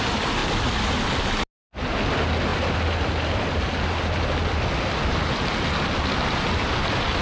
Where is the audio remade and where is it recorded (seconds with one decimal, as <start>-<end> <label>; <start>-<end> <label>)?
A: 0.0-7.2 recorded